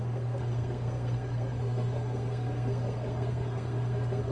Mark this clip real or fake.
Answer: fake